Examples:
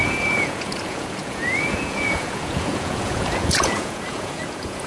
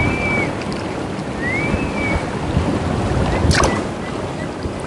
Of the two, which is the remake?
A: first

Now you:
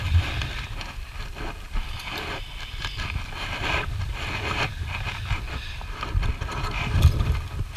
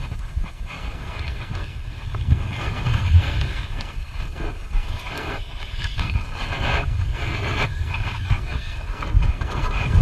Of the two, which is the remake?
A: second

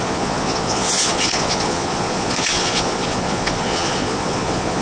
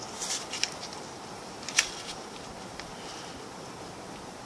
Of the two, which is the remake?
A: first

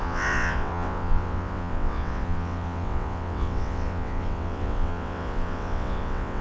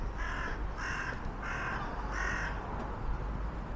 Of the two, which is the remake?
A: first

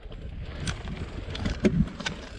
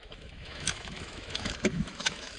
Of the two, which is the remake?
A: second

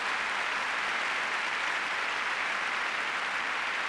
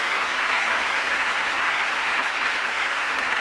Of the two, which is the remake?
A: second